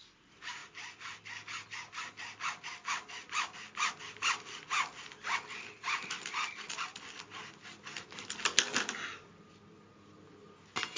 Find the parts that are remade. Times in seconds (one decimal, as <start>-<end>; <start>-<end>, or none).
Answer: none